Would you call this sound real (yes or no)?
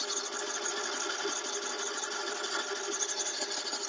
yes